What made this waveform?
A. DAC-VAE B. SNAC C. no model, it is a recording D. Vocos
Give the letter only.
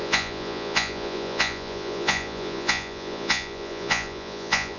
D